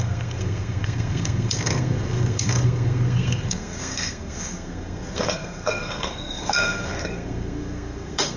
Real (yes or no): no